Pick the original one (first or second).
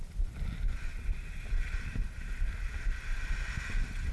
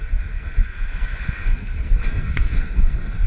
first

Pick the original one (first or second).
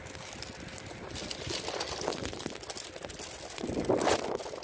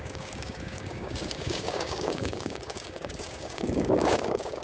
first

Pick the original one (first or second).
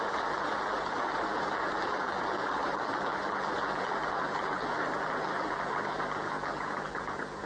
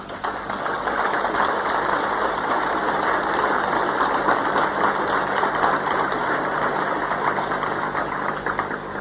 second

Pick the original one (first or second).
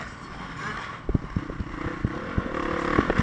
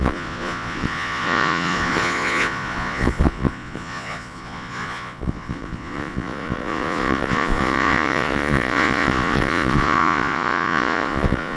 first